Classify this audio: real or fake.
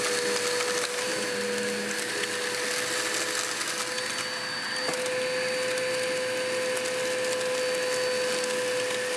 real